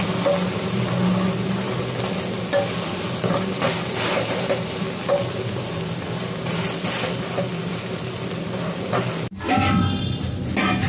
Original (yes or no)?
yes